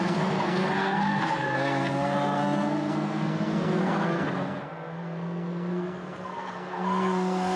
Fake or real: fake